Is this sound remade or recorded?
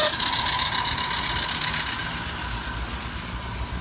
recorded